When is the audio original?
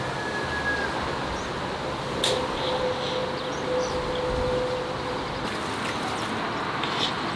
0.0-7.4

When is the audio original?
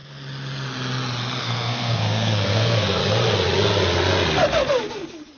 0.0-1.4; 3.0-5.4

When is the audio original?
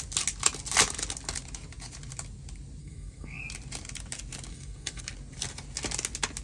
0.0-2.8; 3.4-4.5; 5.0-6.4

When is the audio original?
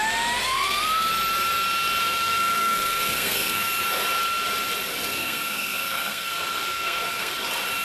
0.0-0.4; 1.1-2.0; 3.7-5.1; 7.3-7.8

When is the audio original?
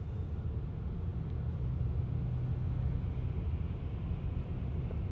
0.0-5.1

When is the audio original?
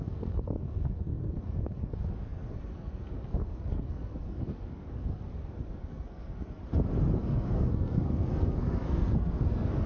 6.6-7.2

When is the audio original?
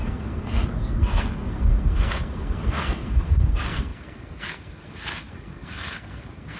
none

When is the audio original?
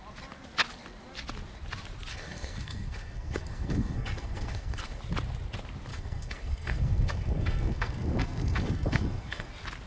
0.0-2.1; 5.0-5.9; 9.5-9.9